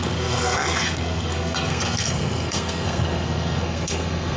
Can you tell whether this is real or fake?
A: fake